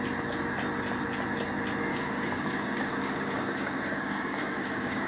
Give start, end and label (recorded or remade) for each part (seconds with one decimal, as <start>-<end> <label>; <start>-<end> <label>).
0.0-1.9 recorded; 1.9-5.1 remade